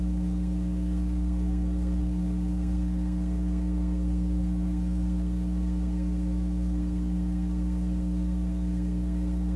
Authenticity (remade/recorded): remade